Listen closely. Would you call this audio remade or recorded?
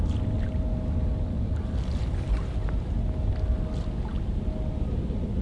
recorded